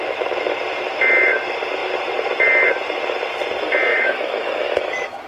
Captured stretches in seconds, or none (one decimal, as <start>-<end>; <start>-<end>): 0.0-3.9